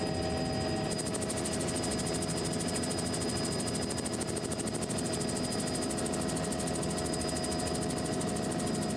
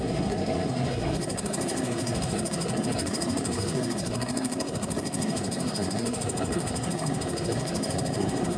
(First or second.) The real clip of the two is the first